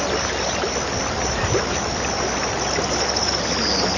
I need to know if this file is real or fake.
real